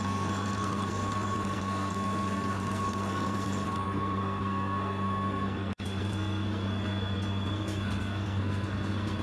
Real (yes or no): no